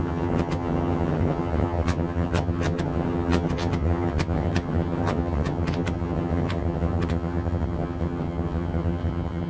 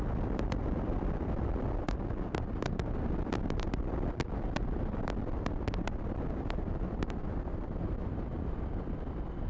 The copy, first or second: first